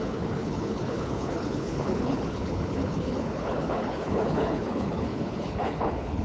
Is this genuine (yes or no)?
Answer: no